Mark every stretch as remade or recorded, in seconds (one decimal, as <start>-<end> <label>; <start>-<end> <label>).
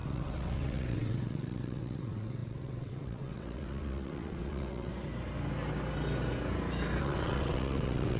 0.0-4.9 remade; 4.9-7.0 recorded; 7.0-8.2 remade